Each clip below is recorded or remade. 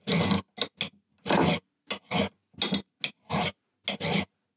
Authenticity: recorded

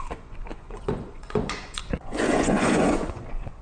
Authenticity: remade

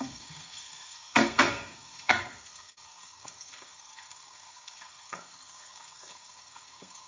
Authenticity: remade